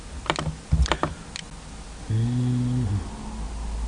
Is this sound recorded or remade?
recorded